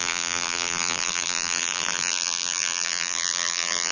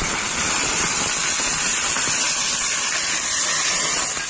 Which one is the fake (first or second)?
first